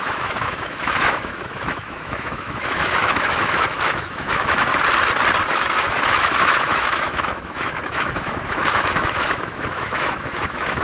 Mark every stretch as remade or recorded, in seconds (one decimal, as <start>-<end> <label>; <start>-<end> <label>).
0.0-4.7 remade; 4.7-5.5 recorded; 5.5-10.8 remade